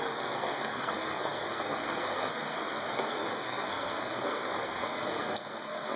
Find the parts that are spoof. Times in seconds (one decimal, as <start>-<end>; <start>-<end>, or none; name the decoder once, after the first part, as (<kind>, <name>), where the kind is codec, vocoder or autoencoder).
0.0-6.0 (codec, SNAC)